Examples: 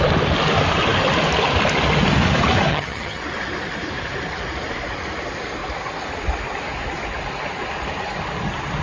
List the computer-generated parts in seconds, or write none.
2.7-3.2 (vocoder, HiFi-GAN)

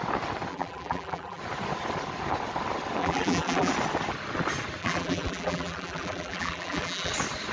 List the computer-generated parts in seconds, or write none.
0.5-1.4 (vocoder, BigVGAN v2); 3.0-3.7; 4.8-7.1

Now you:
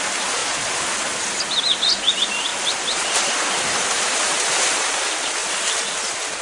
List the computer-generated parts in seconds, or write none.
none

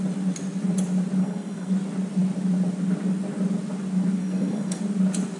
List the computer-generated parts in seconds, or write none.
1.2-1.7 (codec, SNAC); 4.2-4.8